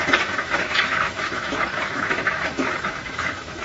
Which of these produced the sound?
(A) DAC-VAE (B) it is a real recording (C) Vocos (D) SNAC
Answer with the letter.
A